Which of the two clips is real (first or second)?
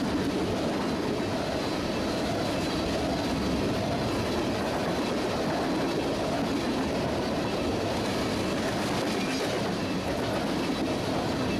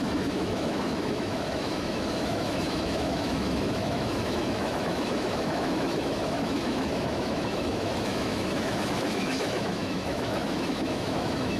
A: first